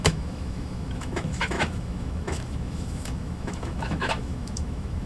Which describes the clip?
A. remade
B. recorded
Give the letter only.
A